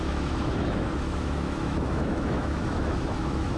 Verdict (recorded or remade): remade